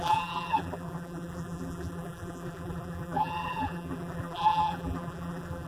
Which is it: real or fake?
fake